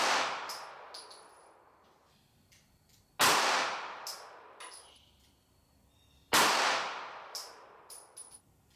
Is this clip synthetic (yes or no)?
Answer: no